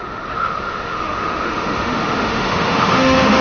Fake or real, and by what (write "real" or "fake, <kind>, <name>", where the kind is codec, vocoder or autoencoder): fake, autoencoder, DAC-VAE